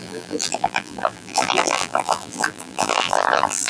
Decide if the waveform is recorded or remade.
remade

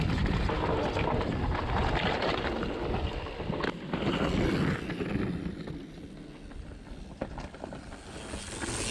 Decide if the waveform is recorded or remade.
recorded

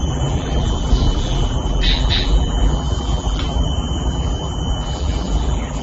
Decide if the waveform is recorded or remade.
remade